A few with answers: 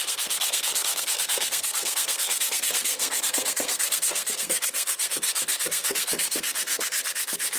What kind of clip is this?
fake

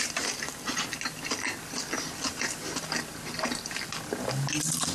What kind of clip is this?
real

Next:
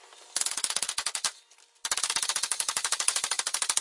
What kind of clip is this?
real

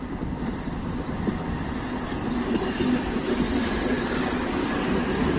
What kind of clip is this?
real